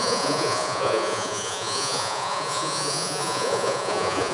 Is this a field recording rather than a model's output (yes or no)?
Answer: no